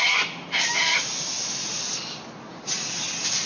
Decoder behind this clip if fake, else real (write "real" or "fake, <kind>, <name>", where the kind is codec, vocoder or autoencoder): real